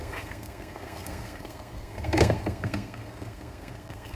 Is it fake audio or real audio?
fake